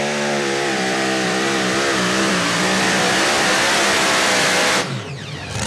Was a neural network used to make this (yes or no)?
yes